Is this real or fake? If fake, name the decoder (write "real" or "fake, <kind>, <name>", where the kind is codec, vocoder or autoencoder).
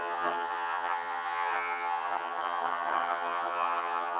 fake, vocoder, HiFi-GAN